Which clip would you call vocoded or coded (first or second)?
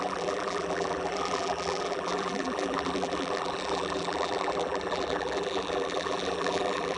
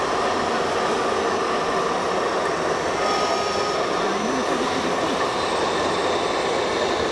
first